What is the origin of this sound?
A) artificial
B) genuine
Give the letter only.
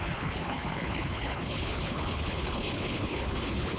A